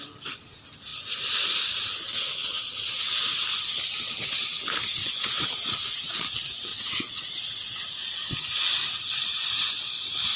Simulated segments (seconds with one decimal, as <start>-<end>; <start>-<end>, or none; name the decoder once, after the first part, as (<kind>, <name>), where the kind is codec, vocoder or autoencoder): 5.0-5.5 (vocoder, WaveNeXt); 6.7-7.3